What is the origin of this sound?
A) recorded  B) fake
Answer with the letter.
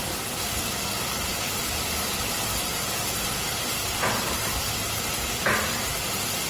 A